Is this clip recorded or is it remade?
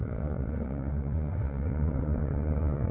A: remade